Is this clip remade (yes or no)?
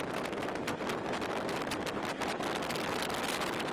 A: no